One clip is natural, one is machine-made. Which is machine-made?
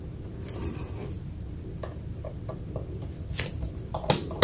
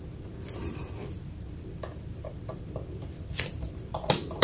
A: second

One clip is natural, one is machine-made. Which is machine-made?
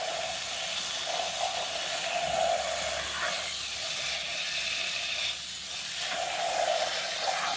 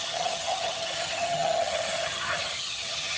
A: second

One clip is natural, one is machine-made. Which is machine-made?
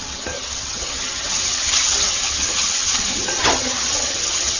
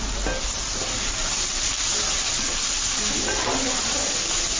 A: first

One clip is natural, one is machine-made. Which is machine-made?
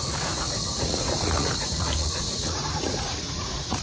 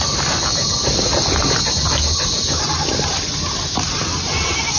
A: first